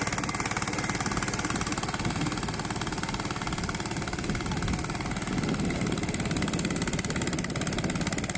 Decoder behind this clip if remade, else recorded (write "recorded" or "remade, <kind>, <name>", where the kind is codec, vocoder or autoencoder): recorded